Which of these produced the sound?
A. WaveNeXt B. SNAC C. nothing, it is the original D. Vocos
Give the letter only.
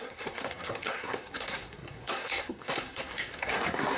B